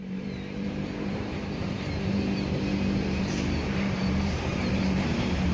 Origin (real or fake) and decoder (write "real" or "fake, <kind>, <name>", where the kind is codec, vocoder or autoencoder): fake, vocoder, BigVGAN v2